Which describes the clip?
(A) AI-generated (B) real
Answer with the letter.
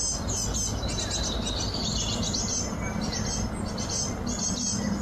B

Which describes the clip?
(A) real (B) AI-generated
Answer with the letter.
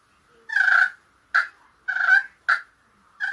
A